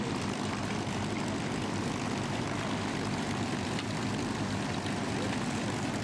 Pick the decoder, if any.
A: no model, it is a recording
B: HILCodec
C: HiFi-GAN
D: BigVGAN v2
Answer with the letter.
D